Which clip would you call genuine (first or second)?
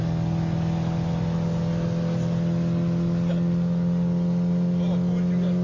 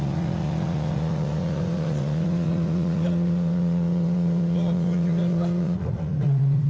first